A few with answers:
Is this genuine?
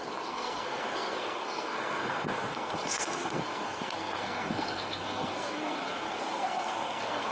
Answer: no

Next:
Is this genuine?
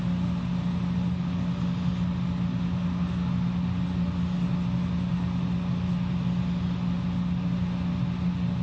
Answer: yes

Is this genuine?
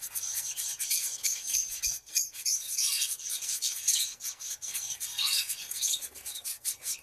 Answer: no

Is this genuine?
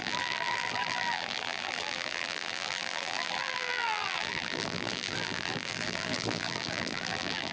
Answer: no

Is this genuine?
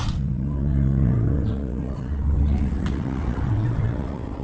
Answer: no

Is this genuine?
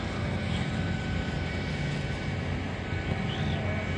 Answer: yes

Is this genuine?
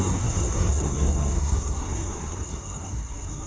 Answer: no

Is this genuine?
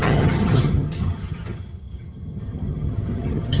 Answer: no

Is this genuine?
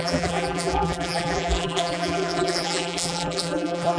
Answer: no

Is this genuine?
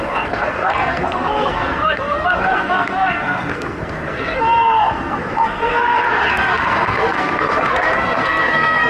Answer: no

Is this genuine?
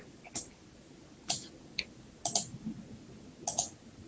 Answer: yes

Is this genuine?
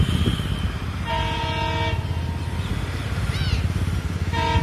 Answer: yes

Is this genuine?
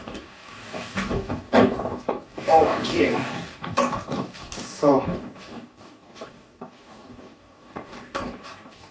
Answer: no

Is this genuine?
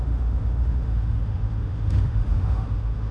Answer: no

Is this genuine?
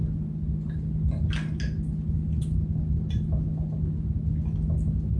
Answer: yes